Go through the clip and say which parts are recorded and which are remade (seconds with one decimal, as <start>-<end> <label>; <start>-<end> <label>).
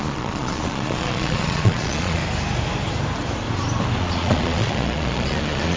0.0-2.2 remade; 2.2-4.0 recorded; 4.0-5.8 remade